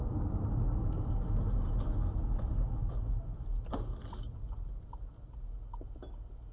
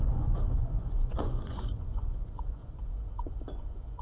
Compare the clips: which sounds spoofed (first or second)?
second